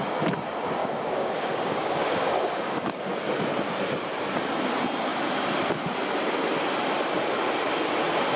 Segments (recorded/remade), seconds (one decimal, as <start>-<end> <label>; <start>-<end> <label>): 0.0-0.8 recorded; 0.8-3.1 remade; 3.1-8.4 recorded